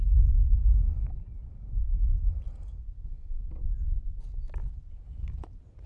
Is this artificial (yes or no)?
no